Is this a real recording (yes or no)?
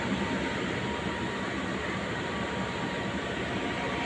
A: yes